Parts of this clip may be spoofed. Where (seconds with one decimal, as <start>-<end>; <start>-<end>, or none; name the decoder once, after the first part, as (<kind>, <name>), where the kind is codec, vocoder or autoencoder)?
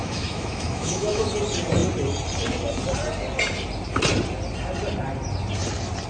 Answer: 0.0-1.3 (autoencoder, DAC-VAE)